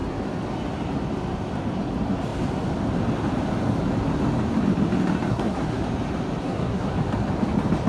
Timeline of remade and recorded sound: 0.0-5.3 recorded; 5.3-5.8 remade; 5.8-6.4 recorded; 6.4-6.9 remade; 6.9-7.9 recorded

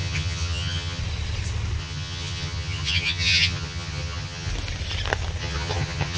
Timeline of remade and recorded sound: 0.0-1.0 remade; 1.0-1.8 recorded; 1.8-4.5 remade; 4.5-5.4 recorded; 5.4-6.2 remade

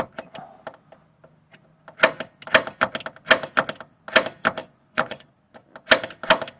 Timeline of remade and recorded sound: 0.0-4.6 recorded; 4.6-5.3 remade; 5.3-6.6 recorded

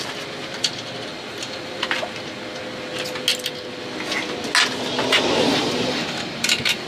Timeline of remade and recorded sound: 0.0-1.1 recorded; 1.1-2.0 remade; 2.0-5.5 recorded; 5.5-6.9 remade

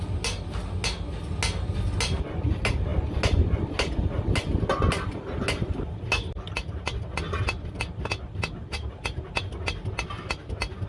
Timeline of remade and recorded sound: 0.0-10.9 recorded

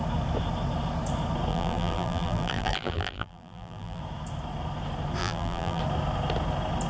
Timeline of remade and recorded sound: 0.0-1.5 recorded; 1.5-4.0 remade; 4.0-5.2 recorded; 5.2-5.8 remade; 5.8-6.9 recorded

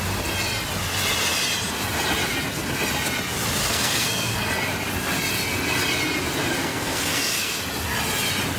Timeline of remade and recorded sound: 0.0-3.6 recorded; 3.6-4.5 remade; 4.5-6.6 recorded; 6.6-7.6 remade; 7.6-8.6 recorded

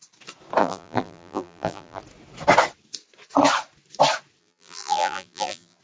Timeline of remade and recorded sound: 0.0-0.6 recorded; 0.6-2.0 remade; 2.0-4.4 recorded; 4.4-5.8 remade